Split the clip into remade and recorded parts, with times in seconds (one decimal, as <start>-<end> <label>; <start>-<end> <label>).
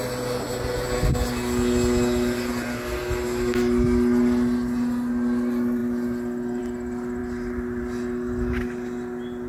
0.0-9.5 recorded